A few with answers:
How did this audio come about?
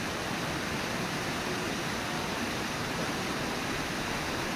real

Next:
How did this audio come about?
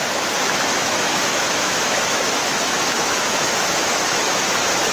fake